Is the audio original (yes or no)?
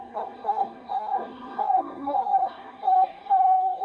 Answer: no